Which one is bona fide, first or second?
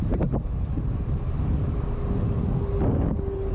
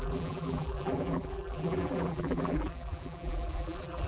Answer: first